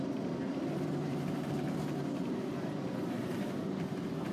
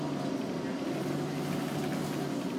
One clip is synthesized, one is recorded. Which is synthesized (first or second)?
first